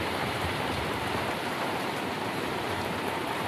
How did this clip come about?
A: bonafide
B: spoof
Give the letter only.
B